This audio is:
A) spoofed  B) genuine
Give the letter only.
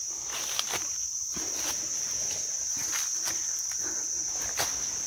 B